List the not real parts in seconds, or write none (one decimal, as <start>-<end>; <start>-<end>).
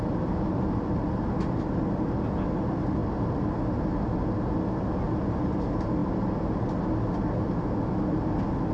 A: none